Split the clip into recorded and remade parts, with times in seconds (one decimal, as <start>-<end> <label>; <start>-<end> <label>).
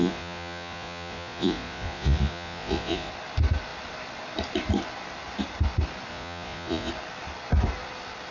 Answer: 0.0-3.1 remade; 3.1-6.1 recorded; 6.1-6.9 remade; 6.9-8.3 recorded